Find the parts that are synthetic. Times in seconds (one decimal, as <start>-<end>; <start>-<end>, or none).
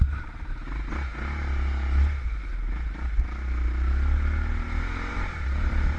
5.1-6.0